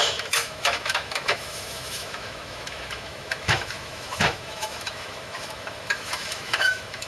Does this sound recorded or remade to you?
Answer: remade